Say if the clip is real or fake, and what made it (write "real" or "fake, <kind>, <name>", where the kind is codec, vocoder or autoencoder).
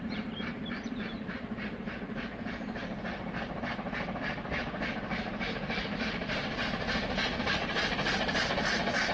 fake, vocoder, BigVGAN v2